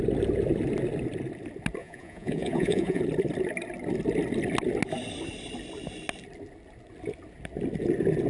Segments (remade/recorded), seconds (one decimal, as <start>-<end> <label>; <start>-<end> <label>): 0.0-1.8 recorded; 1.8-3.0 remade; 3.0-8.3 recorded